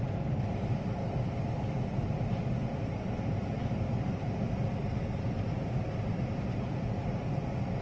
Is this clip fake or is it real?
fake